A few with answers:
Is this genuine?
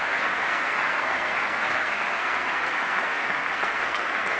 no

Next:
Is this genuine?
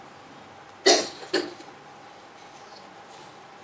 yes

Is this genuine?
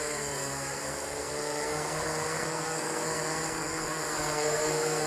no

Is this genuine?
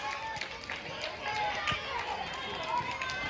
yes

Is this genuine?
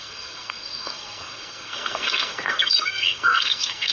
no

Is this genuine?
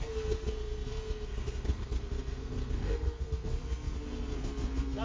no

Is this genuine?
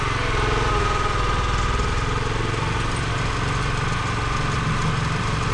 yes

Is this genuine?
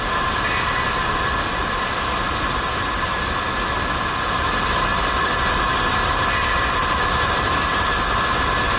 yes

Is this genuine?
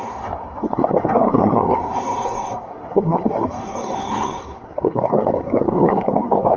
no